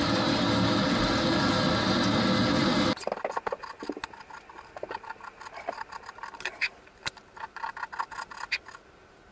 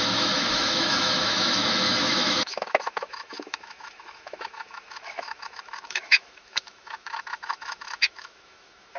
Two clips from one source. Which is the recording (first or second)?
first